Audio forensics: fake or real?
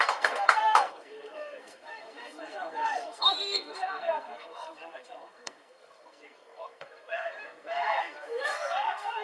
fake